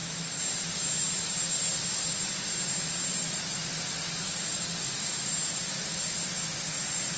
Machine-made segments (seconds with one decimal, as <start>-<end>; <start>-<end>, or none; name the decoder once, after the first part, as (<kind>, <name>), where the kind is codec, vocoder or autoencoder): 3.6-5.6 (vocoder, BigVGAN v2)

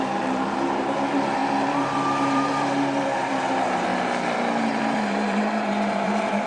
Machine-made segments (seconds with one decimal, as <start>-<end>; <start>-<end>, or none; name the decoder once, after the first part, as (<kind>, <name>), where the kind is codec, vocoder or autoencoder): 0.0-3.9 (vocoder, BigVGAN v2); 4.6-6.5